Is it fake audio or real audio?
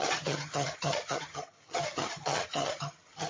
fake